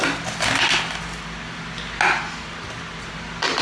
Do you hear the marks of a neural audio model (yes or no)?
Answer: no